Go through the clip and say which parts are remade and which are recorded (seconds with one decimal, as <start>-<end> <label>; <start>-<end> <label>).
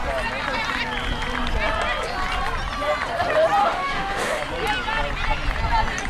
0.0-3.6 recorded; 3.6-4.4 remade; 4.4-6.1 recorded